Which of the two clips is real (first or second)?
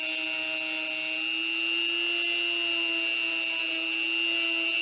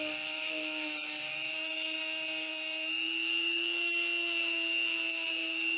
first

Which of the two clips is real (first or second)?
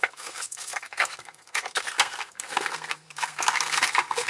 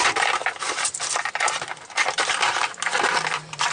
second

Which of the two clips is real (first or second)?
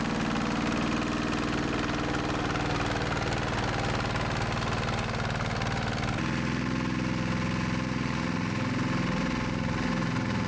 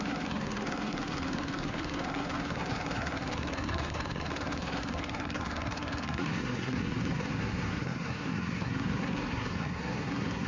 first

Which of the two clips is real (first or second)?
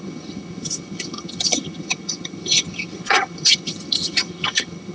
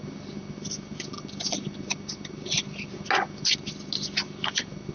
second